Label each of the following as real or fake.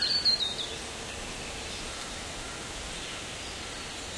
real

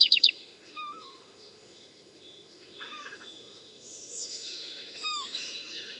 fake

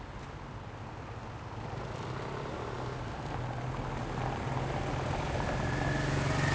real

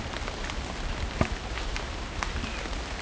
real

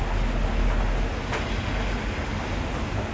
real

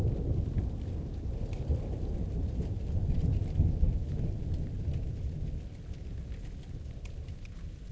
real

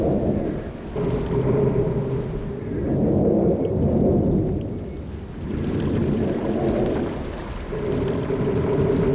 real